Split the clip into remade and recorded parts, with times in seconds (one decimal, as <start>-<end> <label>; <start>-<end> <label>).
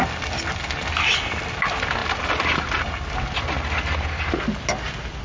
0.0-5.2 recorded